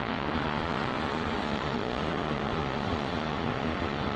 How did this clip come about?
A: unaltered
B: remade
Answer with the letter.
B